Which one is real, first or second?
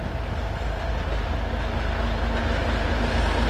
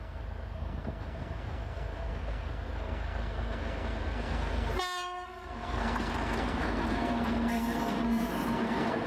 first